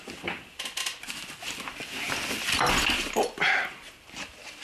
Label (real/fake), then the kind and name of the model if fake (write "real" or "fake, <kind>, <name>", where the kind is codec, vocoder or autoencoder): real